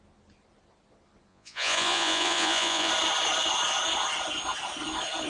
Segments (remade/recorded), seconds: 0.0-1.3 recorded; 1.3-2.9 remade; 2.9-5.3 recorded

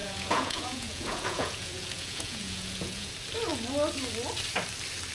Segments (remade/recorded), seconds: 0.0-3.1 remade; 3.1-5.1 recorded